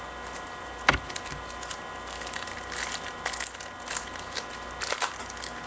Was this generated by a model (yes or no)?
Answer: no